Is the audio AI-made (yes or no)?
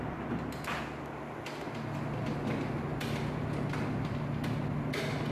no